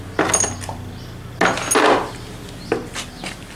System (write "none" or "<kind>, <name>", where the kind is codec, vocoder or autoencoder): none